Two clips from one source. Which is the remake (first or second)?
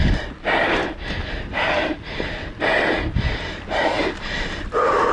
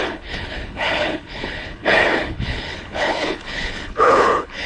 second